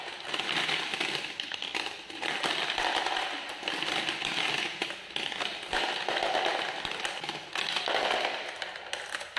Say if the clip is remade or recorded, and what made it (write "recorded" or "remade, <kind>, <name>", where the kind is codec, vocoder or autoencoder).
recorded